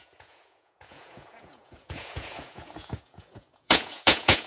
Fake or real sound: fake